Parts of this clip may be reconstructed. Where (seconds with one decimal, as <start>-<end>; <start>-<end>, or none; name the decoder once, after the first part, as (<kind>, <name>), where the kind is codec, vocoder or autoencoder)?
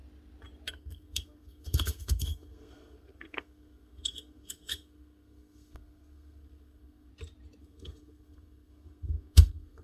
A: 0.7-7.1 (codec, SNAC); 7.6-9.8